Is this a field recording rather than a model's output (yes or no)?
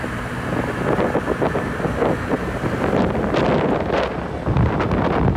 yes